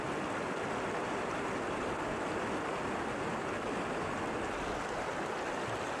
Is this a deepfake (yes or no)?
no